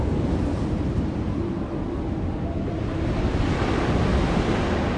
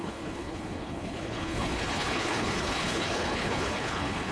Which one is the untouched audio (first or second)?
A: first